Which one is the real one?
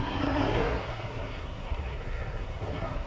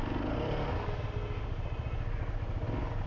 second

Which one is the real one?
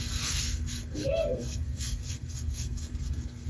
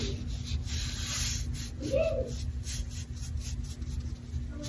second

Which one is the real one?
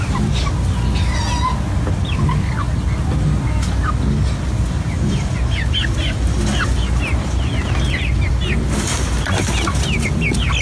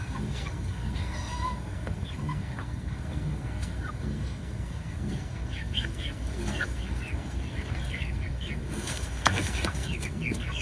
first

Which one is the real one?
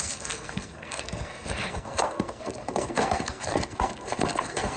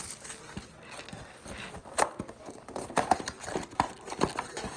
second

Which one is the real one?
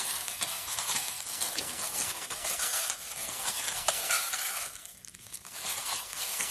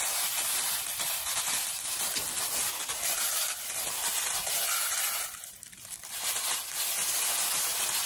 second